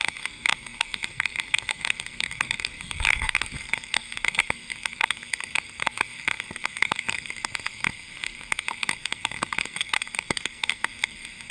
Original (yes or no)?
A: no